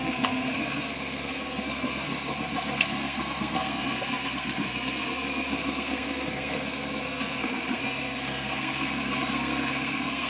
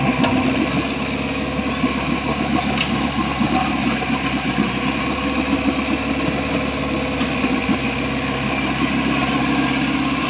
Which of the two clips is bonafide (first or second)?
second